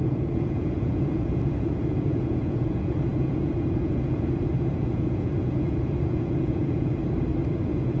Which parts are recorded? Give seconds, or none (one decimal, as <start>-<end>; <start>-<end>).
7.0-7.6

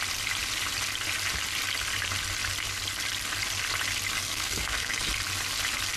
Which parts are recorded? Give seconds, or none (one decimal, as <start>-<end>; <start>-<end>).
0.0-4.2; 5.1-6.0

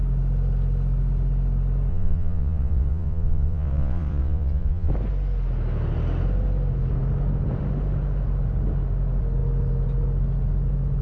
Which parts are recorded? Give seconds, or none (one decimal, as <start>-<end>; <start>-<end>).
0.0-1.9; 4.9-11.0

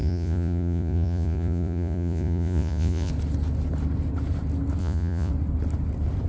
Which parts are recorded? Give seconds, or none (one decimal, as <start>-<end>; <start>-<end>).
3.1-4.8; 5.3-6.3

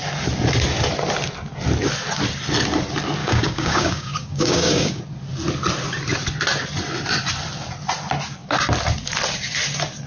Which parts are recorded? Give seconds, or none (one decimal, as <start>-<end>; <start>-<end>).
0.0-3.2; 5.0-10.1

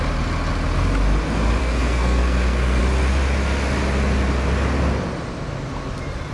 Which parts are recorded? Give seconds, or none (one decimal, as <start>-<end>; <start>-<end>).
0.0-1.6; 2.8-6.3

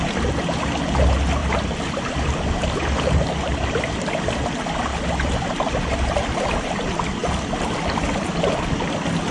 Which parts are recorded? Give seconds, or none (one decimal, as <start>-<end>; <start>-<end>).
0.0-1.4; 4.3-9.3

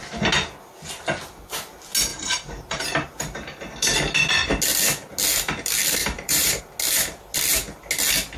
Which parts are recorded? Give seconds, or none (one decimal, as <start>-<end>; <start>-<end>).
0.0-2.1; 2.8-6.0; 6.6-8.4